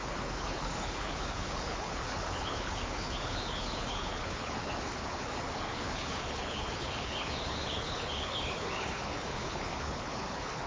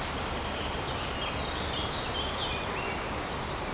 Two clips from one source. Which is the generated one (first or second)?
first